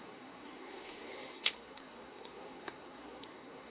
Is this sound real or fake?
fake